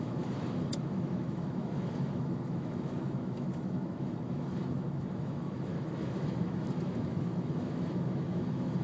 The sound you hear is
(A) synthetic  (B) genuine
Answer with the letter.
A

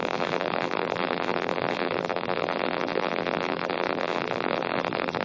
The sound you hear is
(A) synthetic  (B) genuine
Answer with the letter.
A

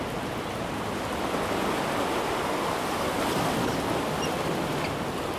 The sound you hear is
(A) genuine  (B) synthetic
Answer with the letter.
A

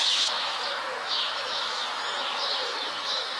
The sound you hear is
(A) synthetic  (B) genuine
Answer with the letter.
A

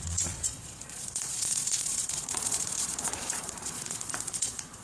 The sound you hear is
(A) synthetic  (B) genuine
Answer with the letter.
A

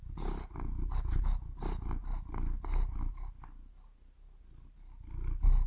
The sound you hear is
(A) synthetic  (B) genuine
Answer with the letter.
B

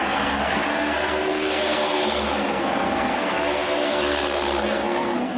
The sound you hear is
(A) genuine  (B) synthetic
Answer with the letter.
B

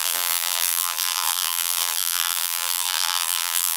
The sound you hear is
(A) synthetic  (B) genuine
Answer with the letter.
A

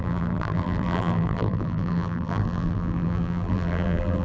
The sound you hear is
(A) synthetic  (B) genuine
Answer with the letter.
A